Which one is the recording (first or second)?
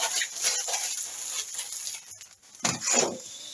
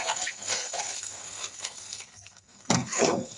first